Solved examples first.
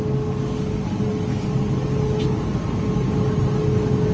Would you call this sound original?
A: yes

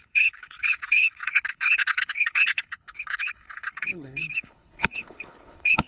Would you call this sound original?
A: no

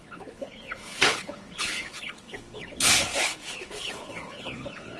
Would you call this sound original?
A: no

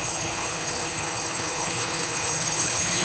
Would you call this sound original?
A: no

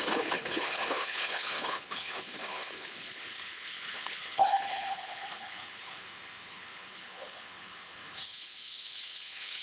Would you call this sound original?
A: no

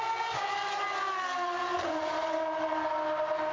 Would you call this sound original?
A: yes